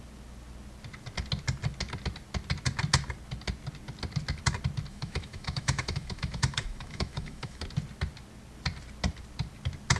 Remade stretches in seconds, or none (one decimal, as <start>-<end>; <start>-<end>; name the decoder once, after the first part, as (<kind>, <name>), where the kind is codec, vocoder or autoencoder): 4.9-7.6 (autoencoder, DAC-VAE)